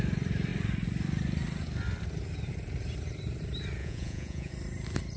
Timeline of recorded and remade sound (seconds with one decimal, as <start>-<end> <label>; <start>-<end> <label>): 0.0-3.8 recorded; 3.8-4.5 remade; 4.5-5.2 recorded